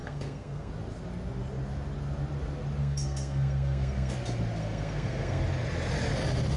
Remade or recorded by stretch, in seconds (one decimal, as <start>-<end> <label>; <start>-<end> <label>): 0.0-0.7 remade; 0.7-2.8 recorded; 2.8-4.1 remade; 4.1-4.6 recorded; 4.6-5.4 remade; 5.4-6.6 recorded